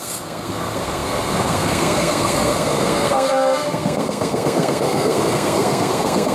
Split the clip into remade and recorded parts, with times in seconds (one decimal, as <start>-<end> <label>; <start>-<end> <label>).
0.0-6.3 remade